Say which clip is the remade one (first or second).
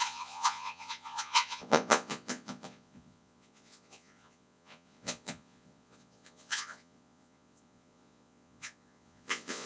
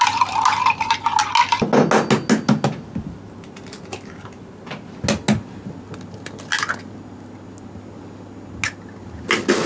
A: first